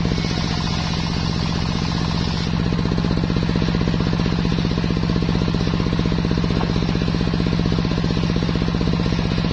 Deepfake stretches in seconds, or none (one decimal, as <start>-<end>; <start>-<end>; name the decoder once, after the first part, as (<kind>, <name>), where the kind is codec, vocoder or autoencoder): none